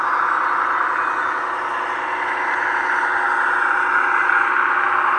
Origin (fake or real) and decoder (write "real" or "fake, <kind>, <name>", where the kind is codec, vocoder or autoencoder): real